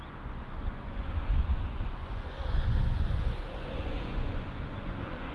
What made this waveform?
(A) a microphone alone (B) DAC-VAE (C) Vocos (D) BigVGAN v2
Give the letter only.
C